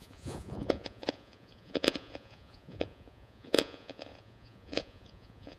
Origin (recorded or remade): remade